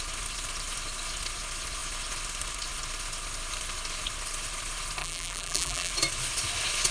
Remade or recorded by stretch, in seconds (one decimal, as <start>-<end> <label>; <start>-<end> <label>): 0.0-5.0 recorded; 5.0-5.9 remade; 5.9-6.9 recorded

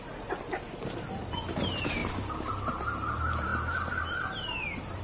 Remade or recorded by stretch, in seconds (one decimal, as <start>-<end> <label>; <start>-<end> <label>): 0.0-2.0 remade; 2.0-3.1 recorded; 3.1-3.5 remade; 3.5-4.0 recorded; 4.0-5.0 remade

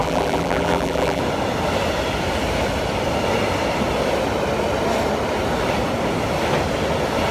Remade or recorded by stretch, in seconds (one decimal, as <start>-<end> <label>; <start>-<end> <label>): 0.0-1.2 remade; 1.2-7.3 recorded

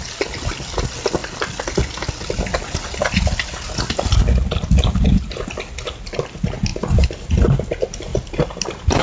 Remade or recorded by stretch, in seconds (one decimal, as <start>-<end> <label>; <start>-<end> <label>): 0.0-8.1 recorded; 8.1-9.0 remade

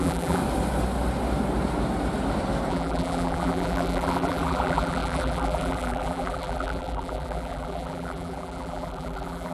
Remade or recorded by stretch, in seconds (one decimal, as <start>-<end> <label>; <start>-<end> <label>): 0.0-0.4 remade; 0.4-2.7 recorded; 2.7-9.5 remade

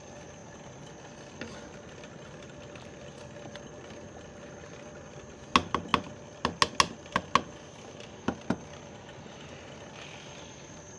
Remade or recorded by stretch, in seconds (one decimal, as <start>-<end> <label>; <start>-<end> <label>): 0.0-11.0 recorded

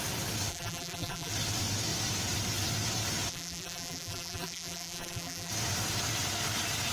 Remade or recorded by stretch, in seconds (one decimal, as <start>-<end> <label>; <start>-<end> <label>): 0.0-0.5 recorded; 0.5-1.3 remade; 1.3-3.3 recorded; 3.3-5.5 remade; 5.5-6.9 recorded

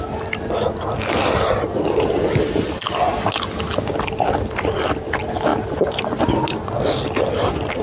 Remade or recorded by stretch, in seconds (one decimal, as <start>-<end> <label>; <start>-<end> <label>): 0.0-5.5 recorded; 5.5-6.2 remade; 6.2-7.8 recorded